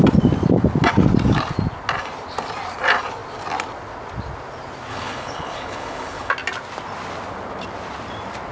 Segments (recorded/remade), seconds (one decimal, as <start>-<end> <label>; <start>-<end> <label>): 0.0-4.9 recorded; 4.9-6.3 remade; 6.3-8.5 recorded